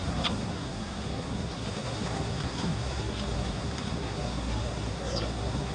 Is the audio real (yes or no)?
no